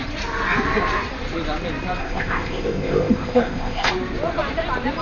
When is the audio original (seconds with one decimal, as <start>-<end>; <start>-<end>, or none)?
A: 0.0-2.0; 3.9-5.0

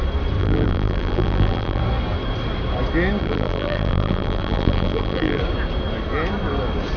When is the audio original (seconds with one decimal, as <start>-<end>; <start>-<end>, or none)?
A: 0.0-0.4; 1.8-3.2; 5.4-7.0

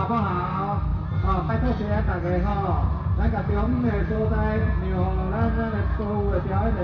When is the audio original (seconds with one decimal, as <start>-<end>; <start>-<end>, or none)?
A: 0.0-0.9; 1.5-2.5; 4.3-6.8

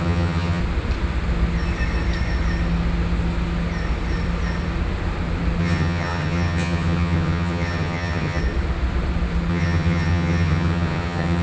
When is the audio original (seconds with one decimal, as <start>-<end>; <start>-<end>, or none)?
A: 0.6-5.6; 8.4-9.5